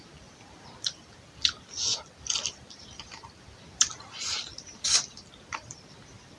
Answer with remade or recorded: remade